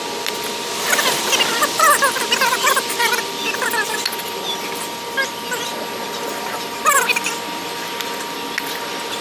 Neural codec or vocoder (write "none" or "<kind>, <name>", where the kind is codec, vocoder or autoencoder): none